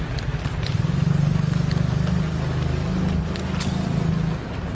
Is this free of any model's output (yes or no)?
yes